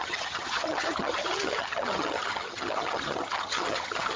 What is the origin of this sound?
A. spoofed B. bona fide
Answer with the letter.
A